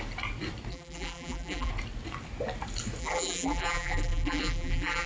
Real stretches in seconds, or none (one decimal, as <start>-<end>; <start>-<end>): 0.0-0.7; 1.7-3.0